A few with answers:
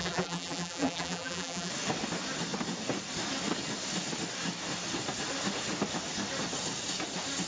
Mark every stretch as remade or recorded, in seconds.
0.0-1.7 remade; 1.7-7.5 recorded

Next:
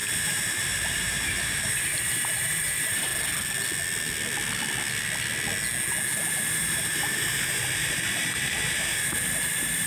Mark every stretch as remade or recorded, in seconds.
0.0-3.1 remade; 3.1-6.3 recorded; 6.3-9.9 remade